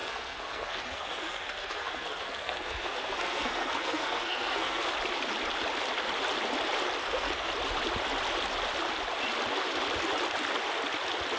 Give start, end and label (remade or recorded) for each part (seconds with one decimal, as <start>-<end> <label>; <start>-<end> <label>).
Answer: 0.0-4.8 remade; 4.8-7.0 recorded; 7.0-7.5 remade; 7.5-11.4 recorded